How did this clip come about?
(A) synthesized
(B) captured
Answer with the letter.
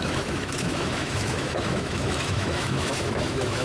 A